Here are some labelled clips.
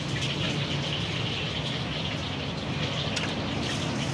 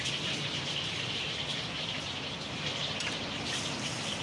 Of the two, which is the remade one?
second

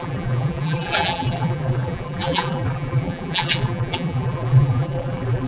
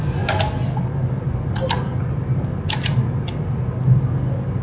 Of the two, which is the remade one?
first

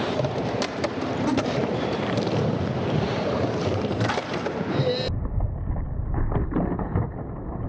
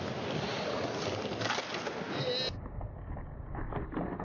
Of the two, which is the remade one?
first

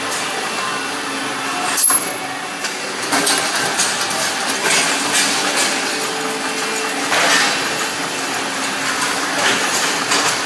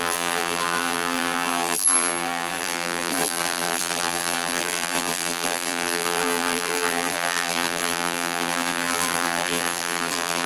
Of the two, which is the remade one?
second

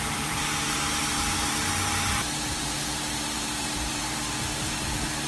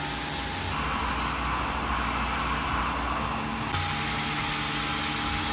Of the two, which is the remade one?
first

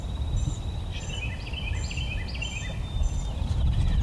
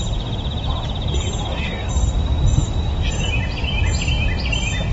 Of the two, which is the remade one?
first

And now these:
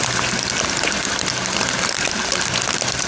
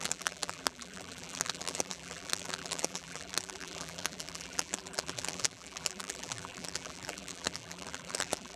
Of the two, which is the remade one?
second